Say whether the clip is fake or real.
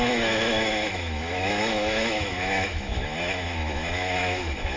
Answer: fake